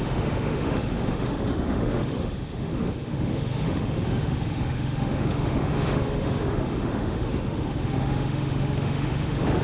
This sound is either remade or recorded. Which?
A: remade